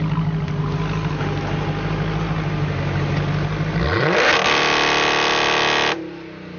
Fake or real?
real